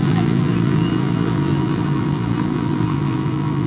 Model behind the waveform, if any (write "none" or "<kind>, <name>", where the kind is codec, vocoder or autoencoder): vocoder, BigVGAN v2